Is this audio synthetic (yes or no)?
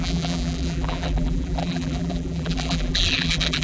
yes